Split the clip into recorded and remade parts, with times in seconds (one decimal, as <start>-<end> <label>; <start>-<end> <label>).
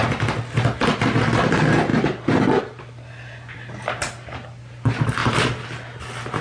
0.0-6.4 recorded